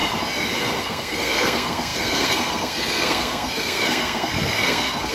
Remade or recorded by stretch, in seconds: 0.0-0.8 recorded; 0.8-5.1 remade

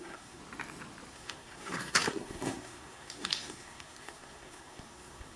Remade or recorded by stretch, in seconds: 0.0-0.4 remade; 0.4-1.1 recorded; 1.1-5.4 remade

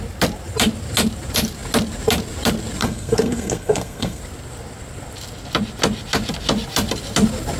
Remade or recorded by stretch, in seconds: 0.0-2.8 recorded; 2.8-4.2 remade; 4.2-7.6 recorded

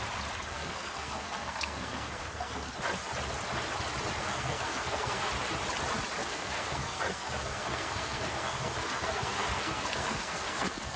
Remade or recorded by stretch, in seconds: 0.0-0.5 recorded; 0.5-2.7 remade; 2.7-4.2 recorded; 4.2-5.3 remade; 5.3-6.2 recorded; 6.2-11.0 remade

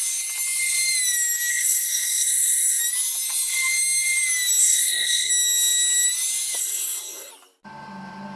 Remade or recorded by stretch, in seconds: 0.0-1.5 recorded; 1.5-2.8 remade; 2.8-4.6 recorded; 4.6-5.3 remade; 5.3-6.6 recorded; 6.6-7.3 remade; 7.3-8.4 recorded

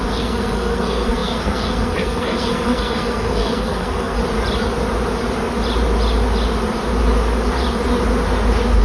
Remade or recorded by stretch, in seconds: 0.0-4.2 remade; 4.2-8.8 recorded